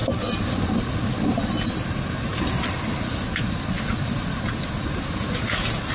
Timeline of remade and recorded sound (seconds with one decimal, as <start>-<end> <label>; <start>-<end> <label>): 0.0-5.9 recorded